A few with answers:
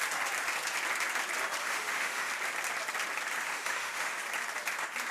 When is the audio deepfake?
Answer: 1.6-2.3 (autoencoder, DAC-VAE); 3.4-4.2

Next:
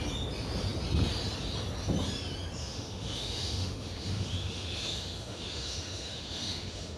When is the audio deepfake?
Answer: 2.6-7.0 (autoencoder, DAC-VAE)

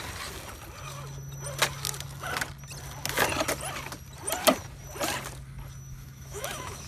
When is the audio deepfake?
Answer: 5.9-6.9 (autoencoder, DAC-VAE)

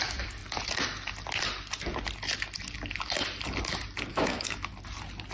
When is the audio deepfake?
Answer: 4.1-4.7 (autoencoder, DAC-VAE)

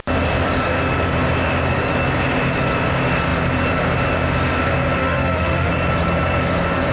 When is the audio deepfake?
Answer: 5.0-5.7 (autoencoder, DAC-VAE)

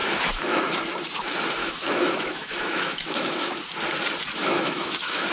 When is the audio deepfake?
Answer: 0.0-0.6 (autoencoder, DAC-VAE); 1.6-3.5; 4.4-5.3

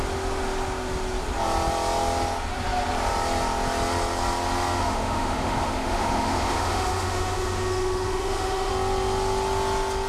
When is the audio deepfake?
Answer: 4.8-8.7 (autoencoder, DAC-VAE)